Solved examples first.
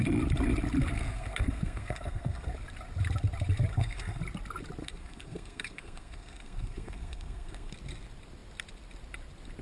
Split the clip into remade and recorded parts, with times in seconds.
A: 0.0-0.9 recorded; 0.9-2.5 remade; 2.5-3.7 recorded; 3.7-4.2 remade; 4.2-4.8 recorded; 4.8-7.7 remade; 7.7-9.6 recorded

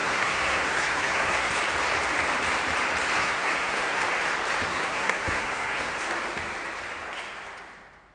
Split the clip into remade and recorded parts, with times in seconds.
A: 0.0-1.5 remade; 1.5-3.2 recorded; 3.2-4.0 remade; 4.0-4.7 recorded; 4.7-5.9 remade; 5.9-8.1 recorded

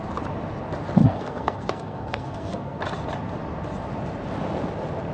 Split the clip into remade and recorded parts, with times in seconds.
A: 0.0-1.0 recorded; 1.0-2.8 remade; 2.8-5.1 recorded